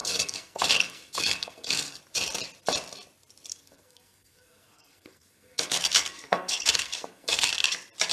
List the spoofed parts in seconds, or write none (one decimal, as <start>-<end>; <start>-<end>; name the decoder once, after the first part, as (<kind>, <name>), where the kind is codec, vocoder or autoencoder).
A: 0.0-2.0 (codec, SNAC); 3.5-7.5